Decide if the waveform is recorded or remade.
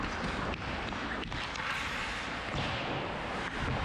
recorded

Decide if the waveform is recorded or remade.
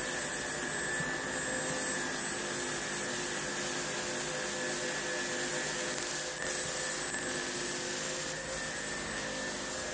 recorded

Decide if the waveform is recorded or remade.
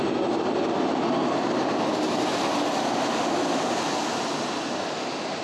recorded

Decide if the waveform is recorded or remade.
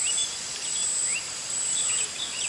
remade